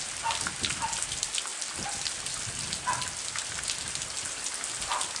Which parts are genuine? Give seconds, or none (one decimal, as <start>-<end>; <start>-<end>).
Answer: 0.0-5.2